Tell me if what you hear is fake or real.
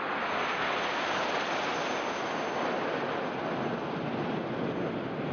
real